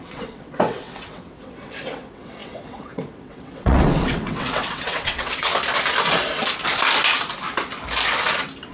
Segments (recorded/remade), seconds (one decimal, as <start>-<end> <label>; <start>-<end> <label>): 0.0-5.5 remade; 5.5-8.7 recorded